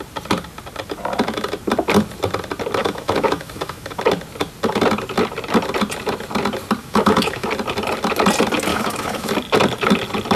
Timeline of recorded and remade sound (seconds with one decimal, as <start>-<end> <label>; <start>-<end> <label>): 0.0-2.8 recorded; 2.8-4.0 remade; 4.0-6.8 recorded; 6.8-7.5 remade; 7.5-8.7 recorded; 8.7-9.3 remade; 9.3-10.4 recorded